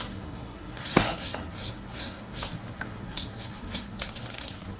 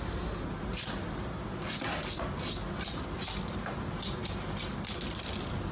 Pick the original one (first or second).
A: second